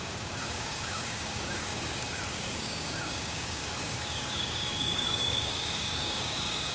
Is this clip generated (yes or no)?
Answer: yes